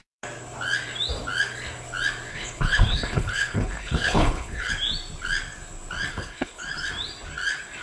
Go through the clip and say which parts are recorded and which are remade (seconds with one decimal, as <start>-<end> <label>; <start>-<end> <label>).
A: 0.0-2.3 recorded; 2.3-4.7 remade; 4.7-6.1 recorded; 6.1-6.6 remade; 6.6-7.8 recorded